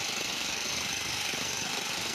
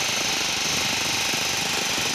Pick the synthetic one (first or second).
first